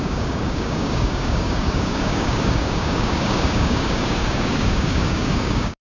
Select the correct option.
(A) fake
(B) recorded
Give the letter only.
A